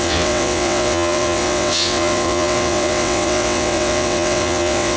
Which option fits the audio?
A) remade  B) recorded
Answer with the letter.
A